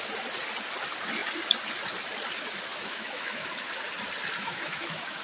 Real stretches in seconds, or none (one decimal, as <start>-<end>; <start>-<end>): 0.0-2.7; 3.5-4.4